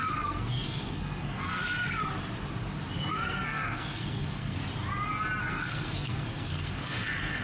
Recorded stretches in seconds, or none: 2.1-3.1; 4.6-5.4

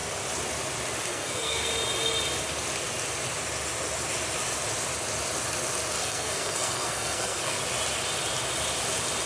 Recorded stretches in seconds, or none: 0.0-1.1; 1.7-6.0; 7.6-9.3